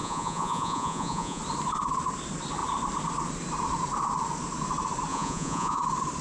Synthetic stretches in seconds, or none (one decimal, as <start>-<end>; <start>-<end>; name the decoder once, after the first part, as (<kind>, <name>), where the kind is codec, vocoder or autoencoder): 0.0-1.4 (vocoder, Vocos); 5.1-5.8